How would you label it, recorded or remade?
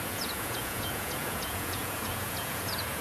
remade